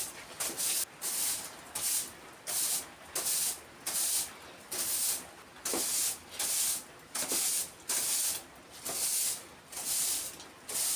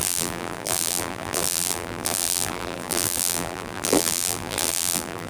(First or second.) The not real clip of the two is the second